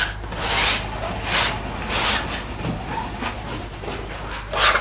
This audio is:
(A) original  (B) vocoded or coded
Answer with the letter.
A